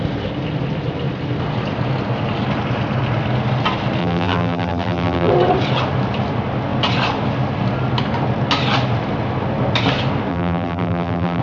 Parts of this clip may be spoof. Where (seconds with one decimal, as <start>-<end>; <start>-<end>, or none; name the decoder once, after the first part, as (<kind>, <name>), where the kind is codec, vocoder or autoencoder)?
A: 4.0-5.3 (vocoder, BigVGAN v2); 10.3-11.4